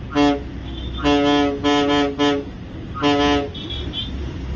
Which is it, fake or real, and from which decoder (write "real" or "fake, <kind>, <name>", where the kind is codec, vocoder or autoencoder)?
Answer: real